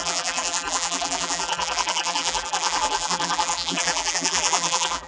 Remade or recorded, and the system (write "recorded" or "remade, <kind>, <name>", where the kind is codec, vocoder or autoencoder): remade, vocoder, BigVGAN v2